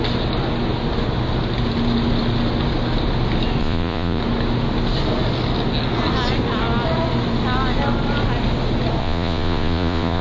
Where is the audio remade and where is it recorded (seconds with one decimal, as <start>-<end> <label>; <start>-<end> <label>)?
0.0-3.6 recorded; 3.6-4.2 remade; 4.2-9.0 recorded; 9.0-10.2 remade